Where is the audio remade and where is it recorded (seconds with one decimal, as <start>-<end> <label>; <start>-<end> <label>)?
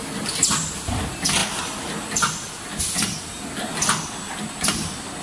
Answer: 0.0-5.2 recorded